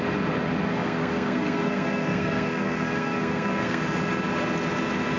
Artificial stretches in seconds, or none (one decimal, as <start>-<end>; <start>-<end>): 0.7-3.8